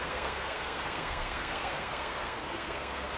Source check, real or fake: fake